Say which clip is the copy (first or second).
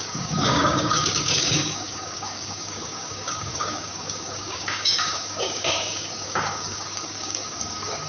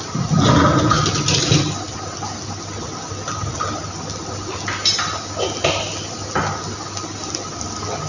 first